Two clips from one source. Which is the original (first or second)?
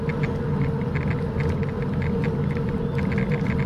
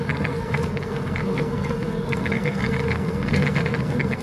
first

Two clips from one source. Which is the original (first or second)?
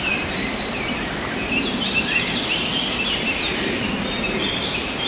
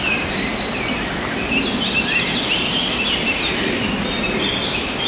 second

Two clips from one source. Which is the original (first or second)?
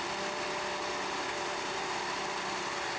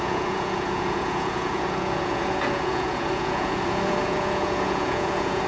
first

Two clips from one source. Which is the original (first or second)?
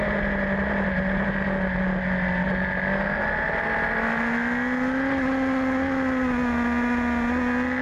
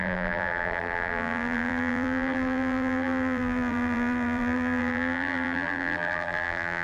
first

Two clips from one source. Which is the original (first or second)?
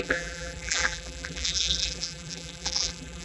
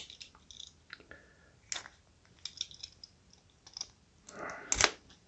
second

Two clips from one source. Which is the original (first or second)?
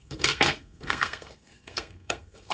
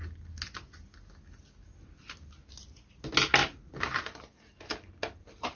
second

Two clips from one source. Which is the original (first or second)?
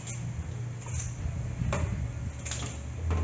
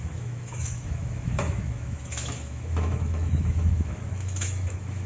first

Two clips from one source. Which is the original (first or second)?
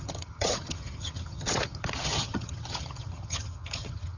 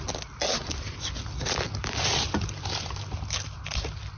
second